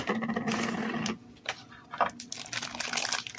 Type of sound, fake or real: real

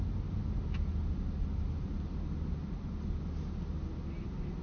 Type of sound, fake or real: real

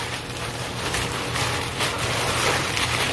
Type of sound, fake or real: fake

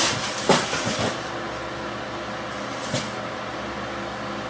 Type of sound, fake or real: real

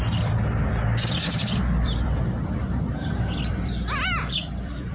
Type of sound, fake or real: fake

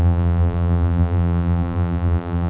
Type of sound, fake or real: fake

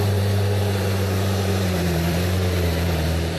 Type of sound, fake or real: fake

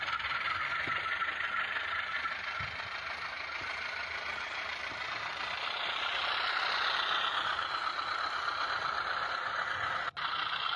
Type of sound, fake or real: real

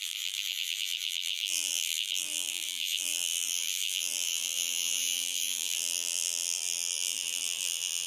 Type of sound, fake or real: fake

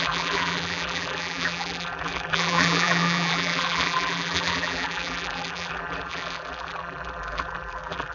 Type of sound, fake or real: fake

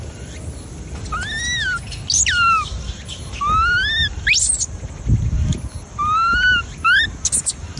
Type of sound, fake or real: real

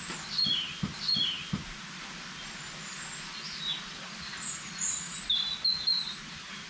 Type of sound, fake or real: real